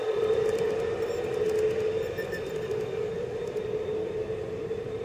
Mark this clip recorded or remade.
recorded